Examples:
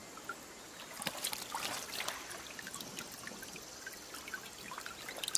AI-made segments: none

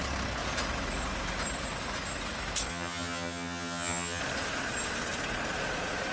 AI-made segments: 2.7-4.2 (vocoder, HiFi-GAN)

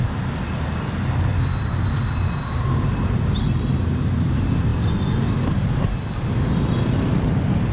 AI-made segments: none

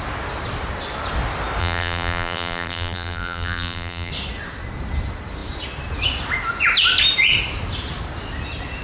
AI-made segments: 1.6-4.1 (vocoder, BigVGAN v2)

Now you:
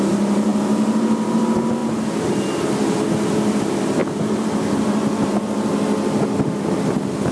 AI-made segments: none